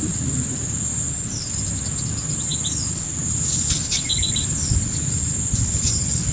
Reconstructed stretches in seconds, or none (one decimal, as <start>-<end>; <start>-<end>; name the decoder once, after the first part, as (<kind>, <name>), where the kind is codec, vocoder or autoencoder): none